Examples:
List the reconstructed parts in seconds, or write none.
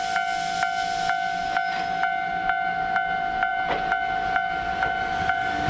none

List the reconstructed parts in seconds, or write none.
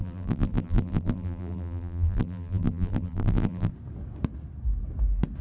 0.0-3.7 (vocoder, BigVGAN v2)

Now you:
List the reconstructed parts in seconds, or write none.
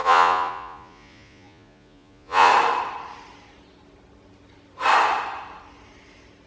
0.0-2.5 (vocoder, Vocos)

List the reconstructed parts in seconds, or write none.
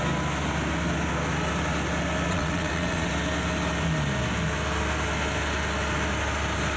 2.3-3.1 (vocoder, WaveNeXt)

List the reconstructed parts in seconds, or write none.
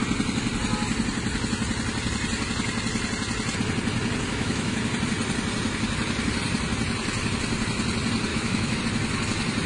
4.3-4.8 (autoencoder, DAC-VAE); 8.3-8.8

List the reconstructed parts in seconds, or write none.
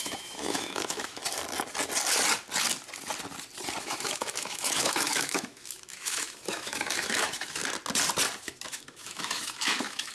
0.0-1.2 (autoencoder, DAC-VAE); 3.8-7.6; 8.4-10.1